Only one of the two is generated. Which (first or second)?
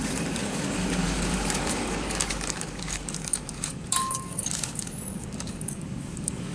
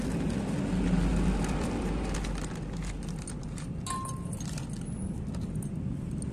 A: first